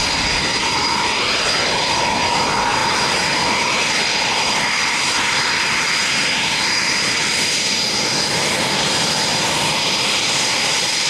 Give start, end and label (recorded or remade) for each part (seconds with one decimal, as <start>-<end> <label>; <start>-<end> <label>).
0.0-6.0 recorded; 6.0-7.8 remade; 7.8-9.3 recorded; 9.3-11.1 remade